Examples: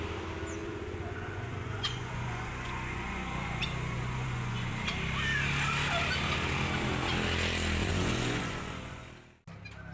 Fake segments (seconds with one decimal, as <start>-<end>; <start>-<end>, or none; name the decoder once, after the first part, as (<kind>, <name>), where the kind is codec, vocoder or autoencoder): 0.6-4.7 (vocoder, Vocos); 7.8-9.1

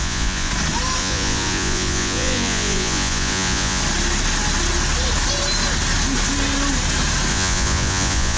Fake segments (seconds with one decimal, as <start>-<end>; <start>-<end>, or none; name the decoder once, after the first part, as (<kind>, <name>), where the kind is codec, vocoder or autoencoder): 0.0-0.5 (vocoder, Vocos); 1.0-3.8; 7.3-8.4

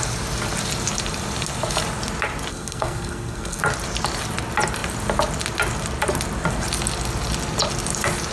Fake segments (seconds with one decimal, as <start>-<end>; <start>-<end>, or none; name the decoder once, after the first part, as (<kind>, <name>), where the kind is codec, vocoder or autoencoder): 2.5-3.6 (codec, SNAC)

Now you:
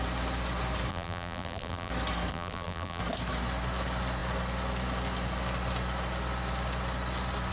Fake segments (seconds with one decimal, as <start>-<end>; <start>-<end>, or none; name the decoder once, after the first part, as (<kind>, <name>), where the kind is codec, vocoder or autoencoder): 0.9-1.9 (vocoder, BigVGAN v2); 2.3-3.0

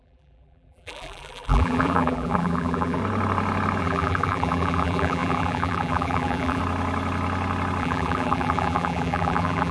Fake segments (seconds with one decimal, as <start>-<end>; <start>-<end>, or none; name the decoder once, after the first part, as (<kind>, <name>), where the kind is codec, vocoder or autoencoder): 0.0-3.0 (vocoder, BigVGAN v2); 3.8-6.6; 7.8-9.7

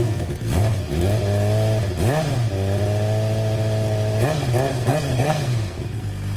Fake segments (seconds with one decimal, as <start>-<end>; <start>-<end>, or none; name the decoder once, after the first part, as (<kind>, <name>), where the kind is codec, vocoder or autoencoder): 0.0-0.9 (codec, SNAC); 4.7-6.4

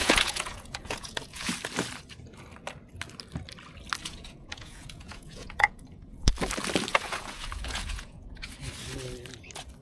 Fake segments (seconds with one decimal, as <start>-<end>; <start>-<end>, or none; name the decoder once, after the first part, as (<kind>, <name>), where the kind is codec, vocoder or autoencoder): 0.0-1.5 (vocoder, Vocos); 4.0-6.3; 6.9-8.5

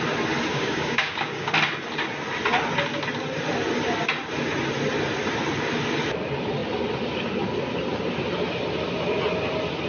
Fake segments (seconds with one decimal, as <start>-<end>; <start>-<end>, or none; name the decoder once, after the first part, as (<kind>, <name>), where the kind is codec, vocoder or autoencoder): 0.5-1.5 (codec, DAC)